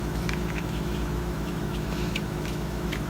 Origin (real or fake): fake